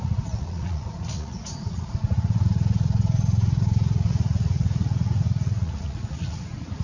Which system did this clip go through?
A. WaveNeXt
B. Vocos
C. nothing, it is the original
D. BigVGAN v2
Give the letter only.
B